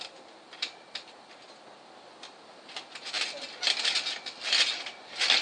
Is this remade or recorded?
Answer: recorded